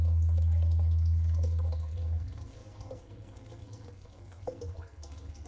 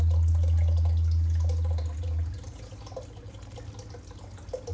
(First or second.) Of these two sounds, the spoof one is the first